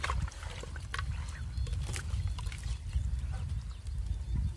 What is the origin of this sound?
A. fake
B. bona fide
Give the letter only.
B